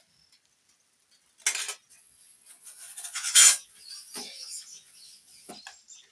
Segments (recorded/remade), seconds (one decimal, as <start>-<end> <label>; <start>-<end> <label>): 0.0-1.9 recorded; 1.9-5.5 remade; 5.5-6.1 recorded